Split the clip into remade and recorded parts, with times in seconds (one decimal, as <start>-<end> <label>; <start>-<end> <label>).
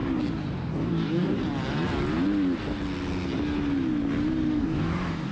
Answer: 0.0-0.7 recorded; 0.7-1.3 remade; 1.3-4.5 recorded; 4.5-5.3 remade